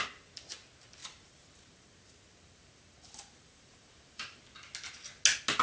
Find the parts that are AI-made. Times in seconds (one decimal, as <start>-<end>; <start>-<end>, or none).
1.0-4.4